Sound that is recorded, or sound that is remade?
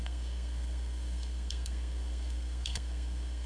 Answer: remade